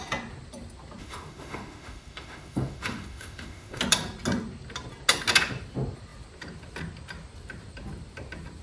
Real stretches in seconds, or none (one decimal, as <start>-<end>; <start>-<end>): 0.0-1.0; 3.8-8.6